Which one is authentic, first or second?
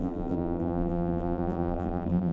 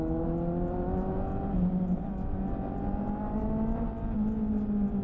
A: second